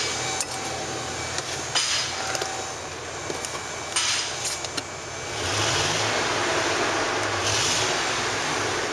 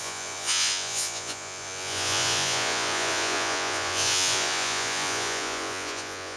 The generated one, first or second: second